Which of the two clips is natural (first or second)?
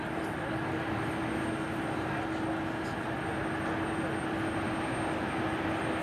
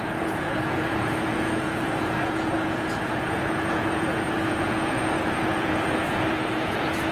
first